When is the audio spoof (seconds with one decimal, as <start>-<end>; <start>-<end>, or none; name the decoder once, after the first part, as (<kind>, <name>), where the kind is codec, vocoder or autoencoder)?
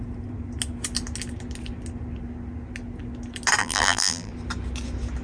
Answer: 3.6-4.3 (vocoder, BigVGAN v2)